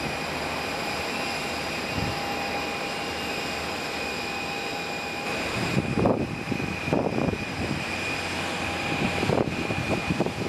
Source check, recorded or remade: remade